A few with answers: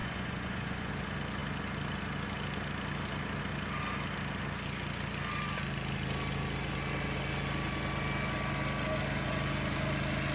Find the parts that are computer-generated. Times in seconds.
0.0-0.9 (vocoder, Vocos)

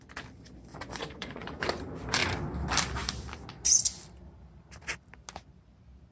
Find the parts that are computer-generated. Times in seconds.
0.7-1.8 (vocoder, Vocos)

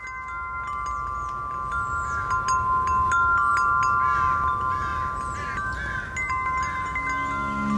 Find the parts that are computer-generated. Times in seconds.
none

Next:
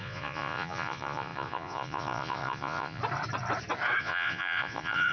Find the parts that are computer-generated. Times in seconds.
0.0-3.0 (vocoder, Vocos); 4.0-5.1

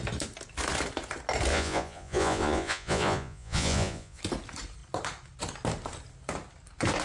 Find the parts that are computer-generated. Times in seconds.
1.5-4.2 (vocoder, Vocos)

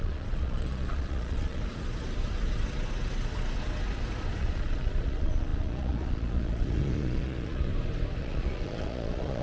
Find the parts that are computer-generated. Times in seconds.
0.0-1.6 (vocoder, Vocos); 4.4-7.7; 8.2-9.4